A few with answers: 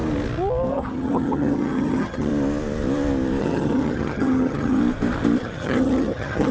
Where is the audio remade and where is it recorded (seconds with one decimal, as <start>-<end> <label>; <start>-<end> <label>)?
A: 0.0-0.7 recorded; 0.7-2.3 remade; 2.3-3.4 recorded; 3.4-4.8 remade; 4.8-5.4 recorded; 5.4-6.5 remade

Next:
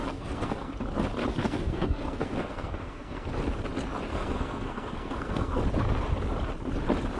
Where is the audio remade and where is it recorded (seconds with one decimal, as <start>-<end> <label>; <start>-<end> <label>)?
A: 0.0-0.7 remade; 0.7-1.4 recorded; 1.4-3.3 remade; 3.3-4.1 recorded; 4.1-5.6 remade; 5.6-7.2 recorded

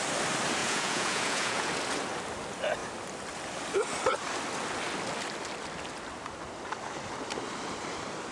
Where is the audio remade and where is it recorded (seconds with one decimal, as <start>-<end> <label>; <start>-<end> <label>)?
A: 0.0-0.6 recorded; 0.6-1.7 remade; 1.7-8.3 recorded

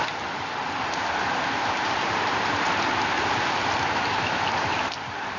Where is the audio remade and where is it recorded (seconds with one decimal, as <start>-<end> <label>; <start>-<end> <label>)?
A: 0.0-2.0 recorded; 2.0-2.9 remade; 2.9-4.1 recorded; 4.1-5.4 remade

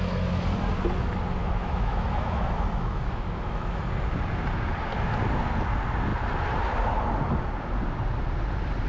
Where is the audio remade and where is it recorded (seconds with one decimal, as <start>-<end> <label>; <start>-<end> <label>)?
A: 0.0-1.4 recorded; 1.4-3.8 remade; 3.8-8.9 recorded

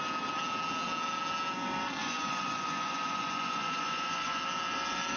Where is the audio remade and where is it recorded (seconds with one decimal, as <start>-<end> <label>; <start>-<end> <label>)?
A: 0.0-2.0 recorded; 2.0-4.4 remade; 4.4-5.2 recorded